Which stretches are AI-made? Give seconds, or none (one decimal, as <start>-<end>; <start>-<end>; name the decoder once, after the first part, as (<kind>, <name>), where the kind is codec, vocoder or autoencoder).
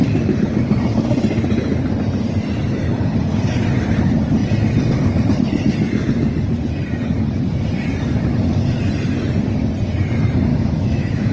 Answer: 10.5-11.3 (autoencoder, DAC-VAE)